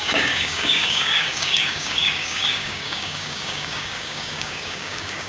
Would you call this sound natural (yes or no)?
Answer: no